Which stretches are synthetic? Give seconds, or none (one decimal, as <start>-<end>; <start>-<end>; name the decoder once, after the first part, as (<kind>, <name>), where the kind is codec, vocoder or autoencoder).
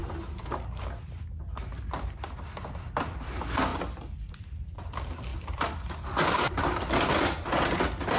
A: none